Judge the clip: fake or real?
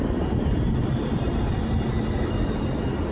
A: real